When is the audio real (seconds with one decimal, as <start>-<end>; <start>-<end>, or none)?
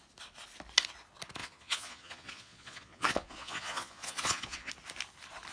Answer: 0.0-1.4; 4.7-5.5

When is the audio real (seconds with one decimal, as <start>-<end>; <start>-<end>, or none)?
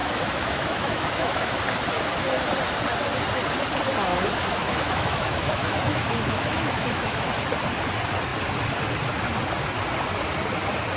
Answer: 1.6-4.1; 7.3-11.0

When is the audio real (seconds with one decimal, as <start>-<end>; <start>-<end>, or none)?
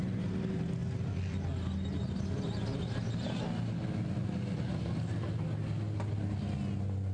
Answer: 0.0-7.1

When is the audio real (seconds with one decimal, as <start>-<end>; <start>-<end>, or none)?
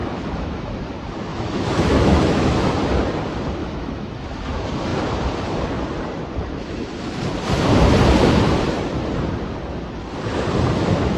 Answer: 0.7-1.3; 2.7-3.6; 4.2-11.2